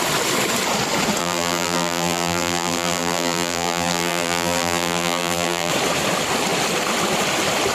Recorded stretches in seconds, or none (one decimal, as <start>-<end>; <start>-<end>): 0.0-1.2; 5.7-7.7